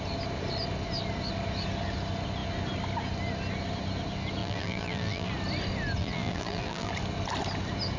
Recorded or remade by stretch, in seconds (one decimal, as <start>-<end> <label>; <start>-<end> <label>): 0.0-4.4 recorded; 4.4-5.3 remade; 5.3-6.0 recorded; 6.0-6.9 remade; 6.9-8.0 recorded